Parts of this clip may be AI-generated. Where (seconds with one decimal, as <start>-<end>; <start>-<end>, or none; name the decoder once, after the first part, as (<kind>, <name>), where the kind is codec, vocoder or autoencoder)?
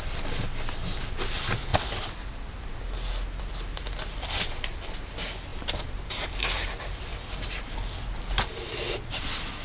none